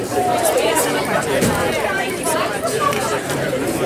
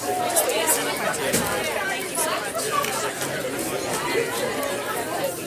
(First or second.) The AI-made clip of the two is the first